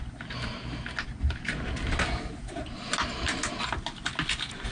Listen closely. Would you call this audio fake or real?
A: real